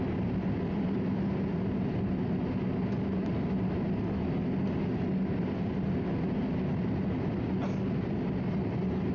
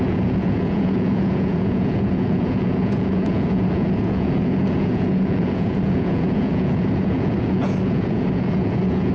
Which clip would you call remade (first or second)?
second